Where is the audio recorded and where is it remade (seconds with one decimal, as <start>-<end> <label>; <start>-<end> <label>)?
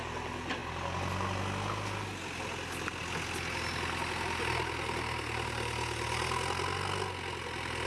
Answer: 0.0-7.9 recorded